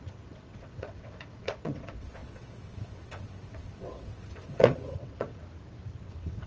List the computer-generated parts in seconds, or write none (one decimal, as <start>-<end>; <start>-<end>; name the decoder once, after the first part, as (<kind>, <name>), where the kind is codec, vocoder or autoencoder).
0.0-5.4 (vocoder, WaveNeXt); 5.9-6.5